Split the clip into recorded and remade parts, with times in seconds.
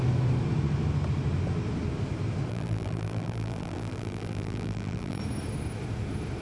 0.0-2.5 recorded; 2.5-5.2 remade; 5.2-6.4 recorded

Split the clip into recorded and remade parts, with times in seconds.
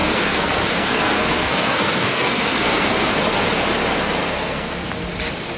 0.0-3.4 remade; 3.4-4.2 recorded; 4.2-4.9 remade; 4.9-5.6 recorded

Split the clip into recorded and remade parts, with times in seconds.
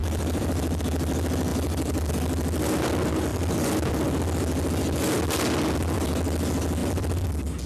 0.0-0.8 remade; 0.8-1.5 recorded; 1.5-2.1 remade; 2.1-3.3 recorded; 3.3-3.9 remade; 3.9-6.8 recorded; 6.8-7.3 remade; 7.3-7.7 recorded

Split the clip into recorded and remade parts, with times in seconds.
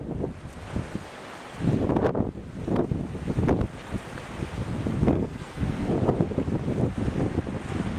0.0-5.0 recorded; 5.0-5.9 remade; 5.9-8.0 recorded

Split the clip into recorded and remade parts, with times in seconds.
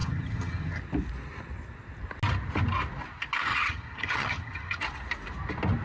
0.0-0.8 remade; 0.8-3.5 recorded; 3.5-4.8 remade; 4.8-5.8 recorded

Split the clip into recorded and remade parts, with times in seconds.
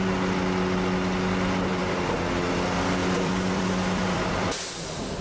0.0-3.0 recorded; 3.0-5.2 remade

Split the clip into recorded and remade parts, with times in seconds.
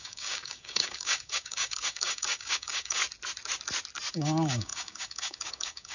0.0-3.0 remade; 3.0-4.1 recorded; 4.1-5.9 remade